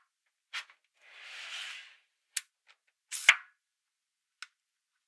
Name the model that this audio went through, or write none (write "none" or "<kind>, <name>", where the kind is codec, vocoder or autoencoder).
none